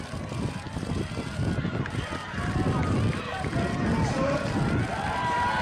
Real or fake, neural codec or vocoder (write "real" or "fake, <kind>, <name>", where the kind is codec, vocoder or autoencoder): real